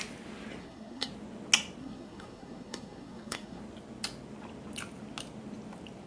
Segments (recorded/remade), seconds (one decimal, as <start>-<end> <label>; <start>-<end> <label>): 0.0-0.6 recorded; 0.6-1.1 remade; 1.1-1.8 recorded; 1.8-3.6 remade; 3.6-6.1 recorded